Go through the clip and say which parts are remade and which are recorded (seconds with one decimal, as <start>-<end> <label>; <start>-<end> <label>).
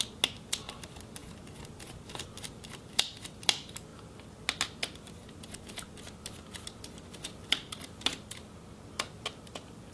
0.0-9.9 recorded